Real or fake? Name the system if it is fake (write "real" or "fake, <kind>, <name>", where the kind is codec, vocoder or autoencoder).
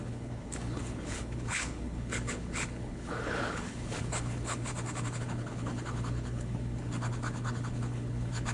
fake, codec, HILCodec